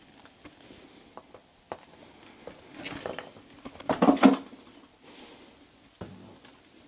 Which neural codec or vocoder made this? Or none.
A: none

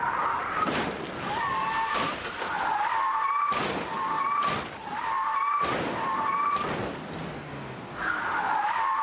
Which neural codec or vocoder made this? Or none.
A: none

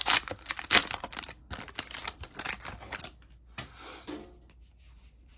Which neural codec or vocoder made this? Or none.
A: none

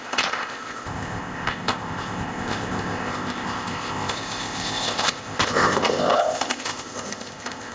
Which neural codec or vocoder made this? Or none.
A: codec, ZipCodec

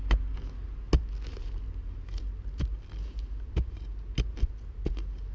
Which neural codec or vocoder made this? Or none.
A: none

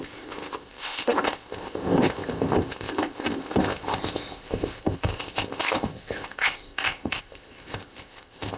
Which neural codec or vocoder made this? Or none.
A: codec, ZipCodec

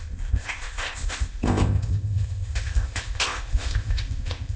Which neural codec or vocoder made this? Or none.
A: codec, ZipCodec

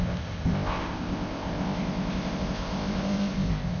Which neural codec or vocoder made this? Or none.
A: codec, ZipCodec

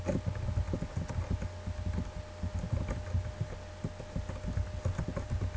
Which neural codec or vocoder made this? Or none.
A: none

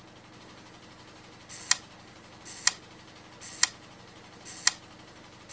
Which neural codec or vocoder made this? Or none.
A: none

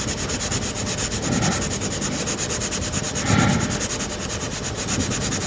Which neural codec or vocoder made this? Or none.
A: none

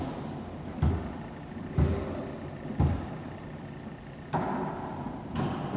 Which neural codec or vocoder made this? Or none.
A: none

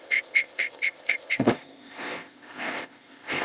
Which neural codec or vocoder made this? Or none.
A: codec, ZipCodec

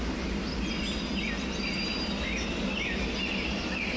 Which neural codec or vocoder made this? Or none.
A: none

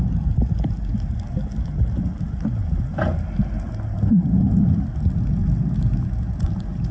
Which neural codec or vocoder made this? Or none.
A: none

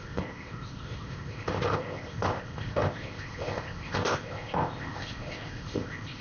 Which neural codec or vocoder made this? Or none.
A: codec, ZipCodec